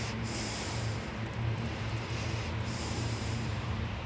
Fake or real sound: fake